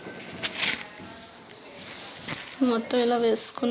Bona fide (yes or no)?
yes